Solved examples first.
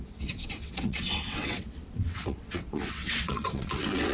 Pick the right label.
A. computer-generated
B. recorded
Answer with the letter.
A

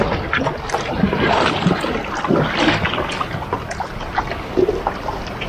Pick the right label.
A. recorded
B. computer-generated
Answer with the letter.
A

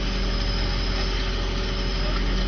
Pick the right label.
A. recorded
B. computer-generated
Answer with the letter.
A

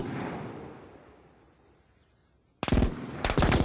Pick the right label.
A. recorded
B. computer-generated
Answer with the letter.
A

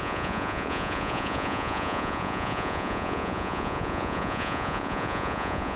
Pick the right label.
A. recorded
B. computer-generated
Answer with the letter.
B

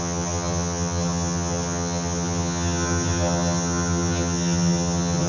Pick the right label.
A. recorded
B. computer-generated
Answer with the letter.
B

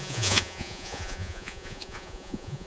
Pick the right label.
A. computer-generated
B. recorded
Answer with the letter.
A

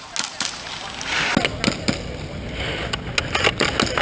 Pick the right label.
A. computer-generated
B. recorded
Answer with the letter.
B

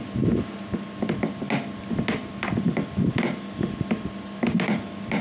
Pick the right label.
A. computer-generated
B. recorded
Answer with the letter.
B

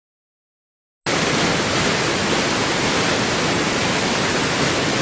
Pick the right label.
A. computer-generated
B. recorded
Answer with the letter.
B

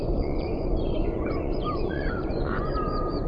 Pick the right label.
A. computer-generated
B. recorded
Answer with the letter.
A